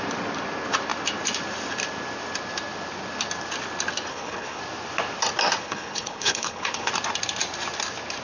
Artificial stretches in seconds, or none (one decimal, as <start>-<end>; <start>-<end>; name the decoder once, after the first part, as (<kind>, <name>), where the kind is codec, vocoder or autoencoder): 4.1-4.6 (codec, HILCodec); 5.6-6.9